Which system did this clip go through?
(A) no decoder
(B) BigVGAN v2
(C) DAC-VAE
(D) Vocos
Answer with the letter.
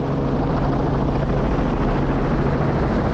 A